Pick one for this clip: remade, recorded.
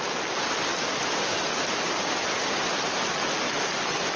recorded